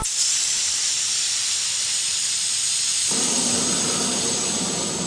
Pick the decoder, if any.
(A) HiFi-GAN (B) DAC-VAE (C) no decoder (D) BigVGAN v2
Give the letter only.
D